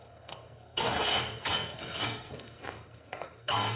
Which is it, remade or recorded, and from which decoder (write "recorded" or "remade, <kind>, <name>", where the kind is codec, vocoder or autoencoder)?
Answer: remade, codec, SNAC